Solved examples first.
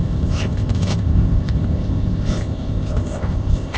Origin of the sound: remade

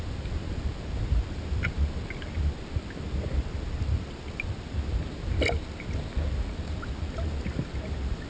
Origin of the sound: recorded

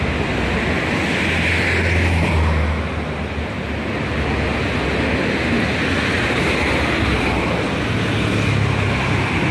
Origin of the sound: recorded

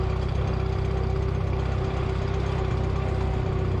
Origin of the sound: recorded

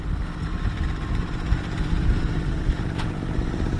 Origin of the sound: recorded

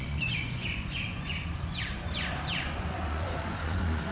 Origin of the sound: remade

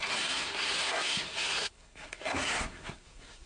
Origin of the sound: remade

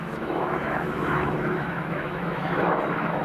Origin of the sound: remade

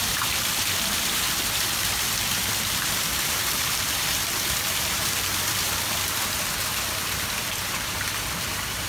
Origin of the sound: remade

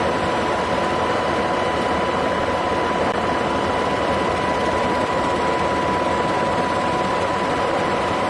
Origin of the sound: remade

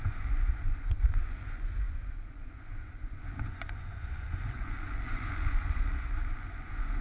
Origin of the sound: remade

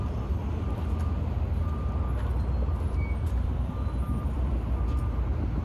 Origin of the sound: recorded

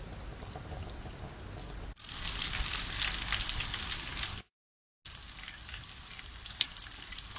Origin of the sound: recorded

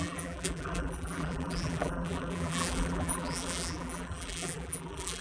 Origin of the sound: remade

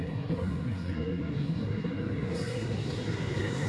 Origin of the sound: remade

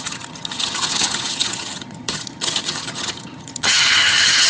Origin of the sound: remade